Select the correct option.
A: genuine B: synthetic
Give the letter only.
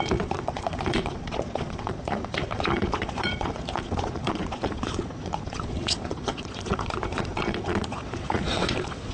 B